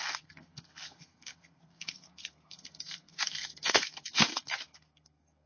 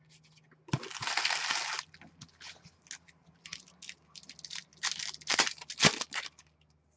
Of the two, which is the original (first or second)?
second